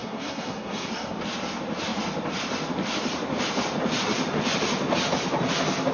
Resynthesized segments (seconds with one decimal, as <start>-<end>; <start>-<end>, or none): 0.0-1.2